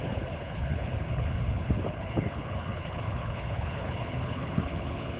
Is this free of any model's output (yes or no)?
no